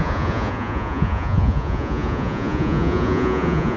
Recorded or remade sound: remade